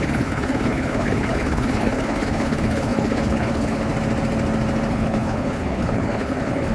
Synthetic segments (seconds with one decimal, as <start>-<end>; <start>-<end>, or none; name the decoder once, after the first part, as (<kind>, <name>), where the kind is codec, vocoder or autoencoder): 0.0-3.9 (codec, HILCodec); 4.9-6.7